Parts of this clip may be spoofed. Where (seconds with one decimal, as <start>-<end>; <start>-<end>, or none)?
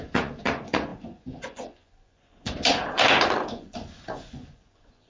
0.0-5.1